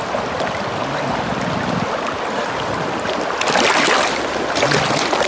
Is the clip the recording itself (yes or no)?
yes